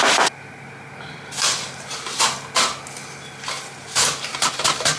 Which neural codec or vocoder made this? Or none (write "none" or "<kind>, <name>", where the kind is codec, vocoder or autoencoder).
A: none